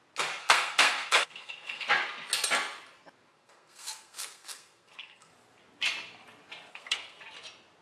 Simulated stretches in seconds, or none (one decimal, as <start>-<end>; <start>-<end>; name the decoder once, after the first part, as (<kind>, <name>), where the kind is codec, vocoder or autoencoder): 0.4-1.9 (codec, SNAC); 3.3-5.3; 6.7-7.2